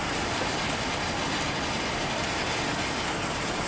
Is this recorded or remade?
recorded